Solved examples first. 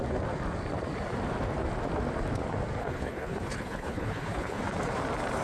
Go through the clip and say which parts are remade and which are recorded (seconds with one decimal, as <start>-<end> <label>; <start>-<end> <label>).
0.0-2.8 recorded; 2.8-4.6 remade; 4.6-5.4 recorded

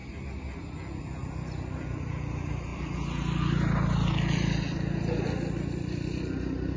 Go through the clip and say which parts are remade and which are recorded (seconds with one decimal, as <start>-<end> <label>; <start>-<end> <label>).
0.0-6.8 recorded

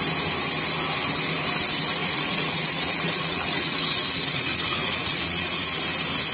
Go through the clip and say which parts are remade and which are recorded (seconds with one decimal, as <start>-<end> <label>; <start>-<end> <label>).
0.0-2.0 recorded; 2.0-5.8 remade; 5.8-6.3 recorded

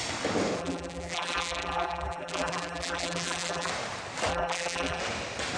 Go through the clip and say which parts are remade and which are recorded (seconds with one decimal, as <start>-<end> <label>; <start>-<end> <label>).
0.0-0.6 recorded; 0.6-3.7 remade; 3.7-4.3 recorded; 4.3-5.0 remade; 5.0-5.6 recorded

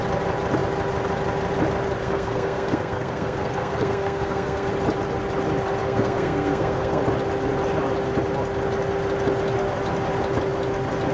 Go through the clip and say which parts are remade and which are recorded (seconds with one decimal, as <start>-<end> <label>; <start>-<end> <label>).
0.0-2.0 recorded; 2.0-4.7 remade; 4.7-5.8 recorded; 5.8-7.0 remade; 7.0-11.1 recorded

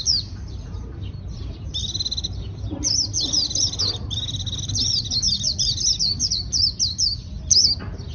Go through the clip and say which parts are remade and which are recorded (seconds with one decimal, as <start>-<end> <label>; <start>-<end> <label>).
0.0-8.1 recorded

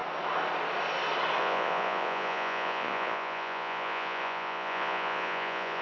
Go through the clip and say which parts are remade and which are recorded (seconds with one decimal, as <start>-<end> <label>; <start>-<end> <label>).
0.0-1.4 recorded; 1.4-5.8 remade

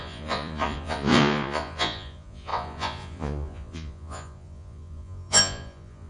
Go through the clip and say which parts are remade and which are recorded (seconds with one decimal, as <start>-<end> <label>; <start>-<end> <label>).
0.0-6.1 remade